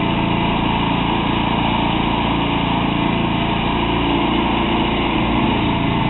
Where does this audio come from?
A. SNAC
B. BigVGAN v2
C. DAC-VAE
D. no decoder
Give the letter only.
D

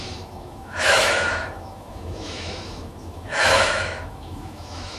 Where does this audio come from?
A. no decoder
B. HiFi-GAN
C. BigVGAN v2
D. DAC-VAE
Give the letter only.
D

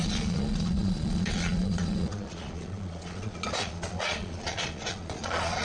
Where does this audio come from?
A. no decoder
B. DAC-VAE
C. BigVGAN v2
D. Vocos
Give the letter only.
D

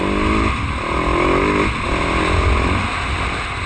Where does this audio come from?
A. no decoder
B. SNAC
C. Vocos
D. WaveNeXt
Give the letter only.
A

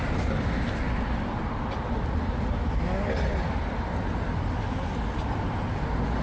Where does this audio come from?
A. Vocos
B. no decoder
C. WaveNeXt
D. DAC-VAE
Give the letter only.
B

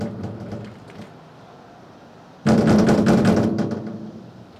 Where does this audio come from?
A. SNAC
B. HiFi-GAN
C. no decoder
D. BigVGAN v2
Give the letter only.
C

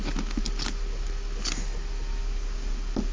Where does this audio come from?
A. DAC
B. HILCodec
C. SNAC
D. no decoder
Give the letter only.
D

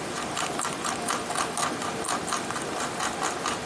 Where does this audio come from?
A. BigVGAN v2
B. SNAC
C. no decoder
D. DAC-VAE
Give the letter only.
C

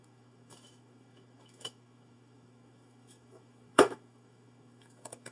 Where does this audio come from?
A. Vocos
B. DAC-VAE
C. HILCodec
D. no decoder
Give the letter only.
B